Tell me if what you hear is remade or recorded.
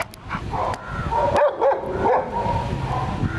recorded